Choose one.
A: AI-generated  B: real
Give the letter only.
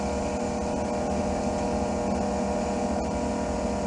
B